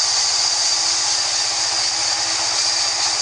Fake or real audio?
real